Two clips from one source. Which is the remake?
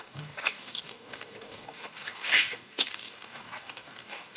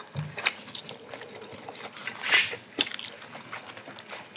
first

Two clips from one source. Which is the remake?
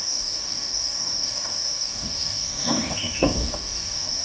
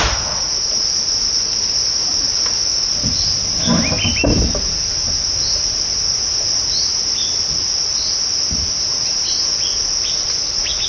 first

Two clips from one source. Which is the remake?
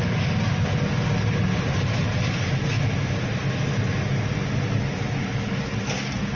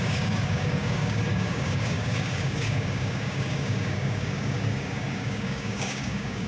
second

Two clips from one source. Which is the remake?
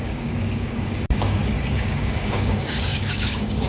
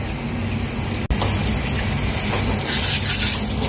first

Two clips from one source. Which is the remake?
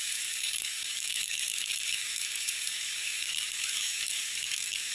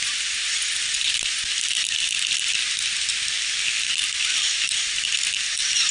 first